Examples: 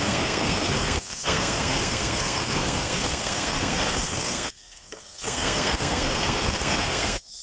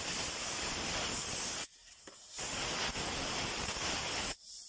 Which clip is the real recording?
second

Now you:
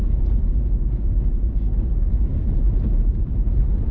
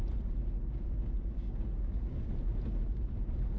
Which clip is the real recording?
second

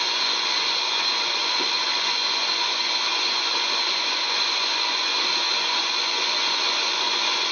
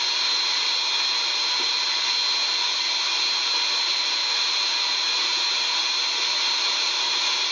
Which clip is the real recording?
second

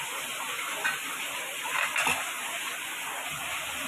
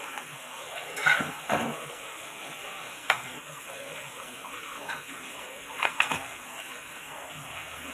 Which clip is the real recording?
first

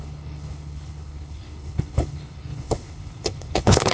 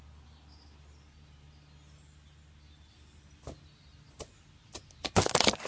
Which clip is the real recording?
second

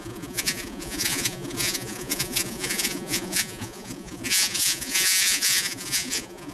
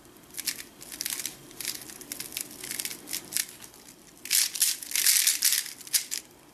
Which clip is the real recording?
second